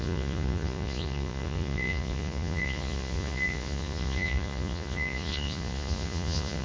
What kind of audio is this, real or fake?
fake